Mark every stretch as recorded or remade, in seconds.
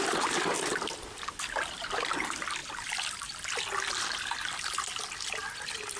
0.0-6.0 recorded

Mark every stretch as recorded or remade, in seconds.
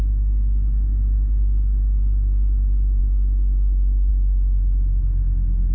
0.0-5.7 recorded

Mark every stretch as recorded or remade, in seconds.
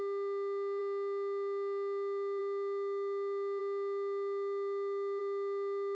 0.0-5.9 recorded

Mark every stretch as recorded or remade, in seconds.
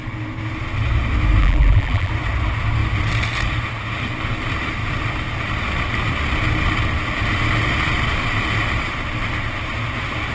0.0-1.4 recorded; 1.4-2.1 remade; 2.1-10.3 recorded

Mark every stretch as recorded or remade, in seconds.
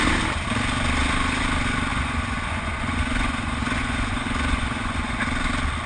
0.0-1.9 recorded; 1.9-5.2 remade; 5.2-5.9 recorded